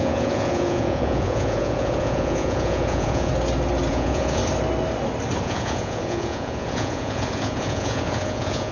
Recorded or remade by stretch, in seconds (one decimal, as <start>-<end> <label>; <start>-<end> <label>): 0.0-3.3 remade; 3.3-3.9 recorded; 3.9-4.4 remade; 4.4-5.4 recorded; 5.4-8.7 remade